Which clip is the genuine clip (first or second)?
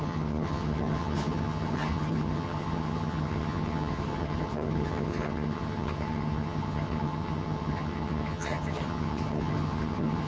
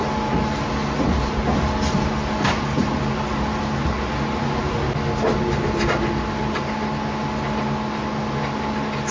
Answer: second